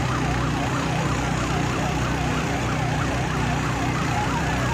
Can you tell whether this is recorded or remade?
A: remade